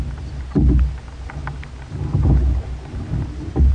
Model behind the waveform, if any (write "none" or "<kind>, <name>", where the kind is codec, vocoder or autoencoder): none